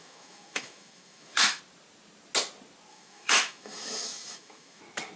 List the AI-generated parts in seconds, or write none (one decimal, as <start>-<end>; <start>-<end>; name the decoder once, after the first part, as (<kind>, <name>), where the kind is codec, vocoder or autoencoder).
0.0-1.6 (autoencoder, DAC-VAE); 2.9-4.8